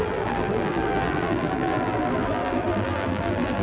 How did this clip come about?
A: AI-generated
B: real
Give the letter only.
A